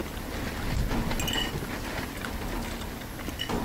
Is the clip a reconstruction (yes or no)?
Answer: no